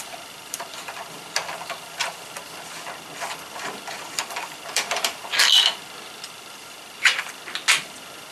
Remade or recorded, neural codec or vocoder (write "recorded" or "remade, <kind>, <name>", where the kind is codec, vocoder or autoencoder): recorded